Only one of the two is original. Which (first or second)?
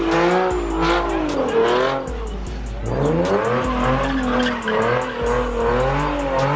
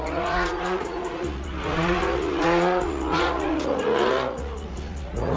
first